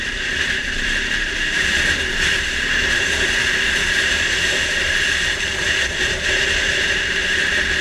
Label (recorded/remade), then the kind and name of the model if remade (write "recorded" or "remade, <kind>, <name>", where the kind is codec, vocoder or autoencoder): remade, vocoder, BigVGAN v2